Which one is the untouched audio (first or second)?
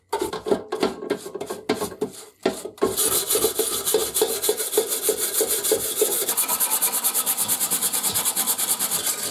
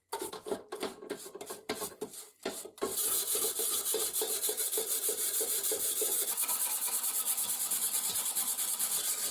first